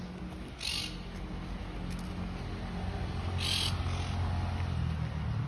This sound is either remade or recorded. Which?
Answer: recorded